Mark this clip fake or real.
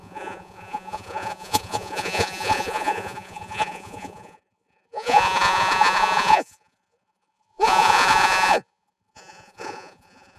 fake